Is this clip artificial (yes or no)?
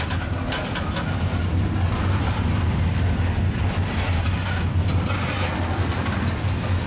no